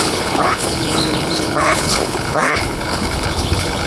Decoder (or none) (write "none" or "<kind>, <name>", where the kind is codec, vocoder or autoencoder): codec, HILCodec